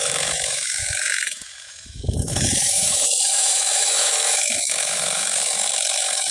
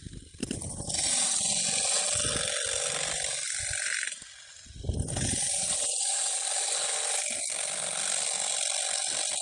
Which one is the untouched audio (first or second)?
second